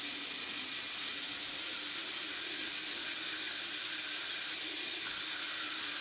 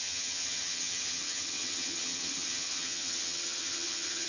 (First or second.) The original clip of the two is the first